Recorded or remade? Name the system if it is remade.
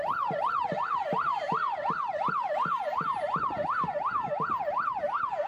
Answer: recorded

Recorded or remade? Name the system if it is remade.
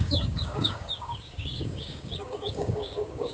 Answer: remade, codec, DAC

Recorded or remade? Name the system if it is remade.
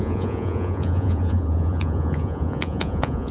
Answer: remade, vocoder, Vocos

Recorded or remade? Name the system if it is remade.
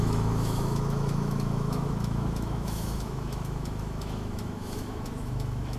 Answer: remade, autoencoder, DAC-VAE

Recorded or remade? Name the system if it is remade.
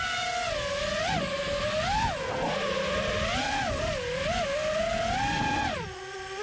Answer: recorded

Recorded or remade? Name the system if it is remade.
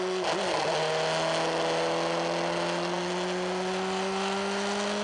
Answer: recorded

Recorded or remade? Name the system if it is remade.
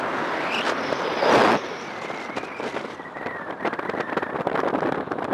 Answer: remade, vocoder, BigVGAN v2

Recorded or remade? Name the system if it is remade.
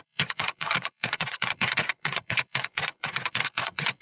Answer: remade, vocoder, Vocos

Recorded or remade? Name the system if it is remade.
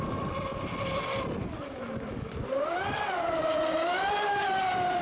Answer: recorded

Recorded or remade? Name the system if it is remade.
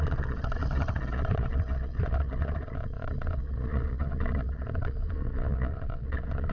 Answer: remade, vocoder, Vocos